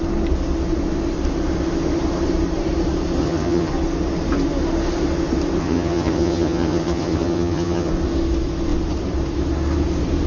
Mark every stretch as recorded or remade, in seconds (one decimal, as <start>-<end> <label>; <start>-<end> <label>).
0.0-3.2 recorded; 3.2-3.7 remade; 3.7-5.6 recorded; 5.6-7.9 remade; 7.9-10.3 recorded